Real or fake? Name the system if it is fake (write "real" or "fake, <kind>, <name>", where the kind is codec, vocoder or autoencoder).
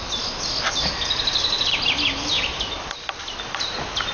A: real